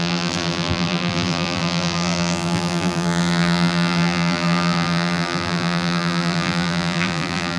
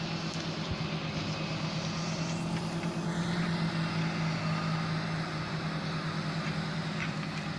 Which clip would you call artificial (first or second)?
first